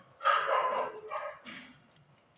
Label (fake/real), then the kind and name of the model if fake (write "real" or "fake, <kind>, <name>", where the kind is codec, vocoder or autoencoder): real